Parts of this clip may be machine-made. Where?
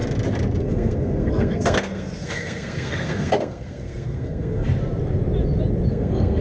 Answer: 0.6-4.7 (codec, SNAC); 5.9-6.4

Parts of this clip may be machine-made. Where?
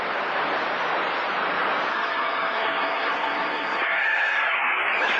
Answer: 1.9-4.8 (codec, SNAC)